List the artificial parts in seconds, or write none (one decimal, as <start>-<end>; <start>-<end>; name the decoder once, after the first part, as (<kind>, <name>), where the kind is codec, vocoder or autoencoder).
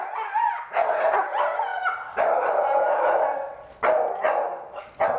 none